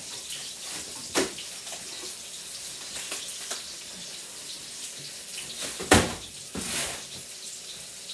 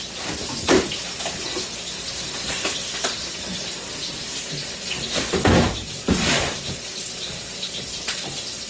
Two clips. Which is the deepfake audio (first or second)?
second